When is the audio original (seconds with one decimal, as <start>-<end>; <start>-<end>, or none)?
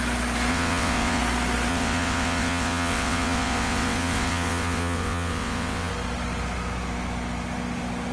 0.0-0.5; 1.2-1.7; 5.9-8.1